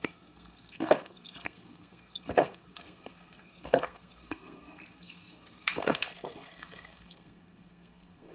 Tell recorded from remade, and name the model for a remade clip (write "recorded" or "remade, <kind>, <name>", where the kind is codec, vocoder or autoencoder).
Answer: remade, codec, SNAC